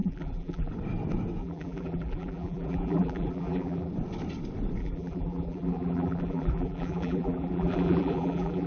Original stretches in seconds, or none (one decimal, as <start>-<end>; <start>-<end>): 0.7-1.4; 3.9-4.8